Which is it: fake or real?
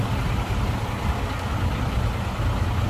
fake